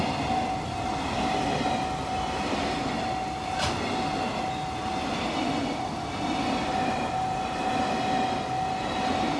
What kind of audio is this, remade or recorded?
recorded